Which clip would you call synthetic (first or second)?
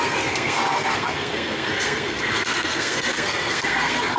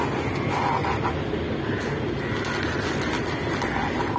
first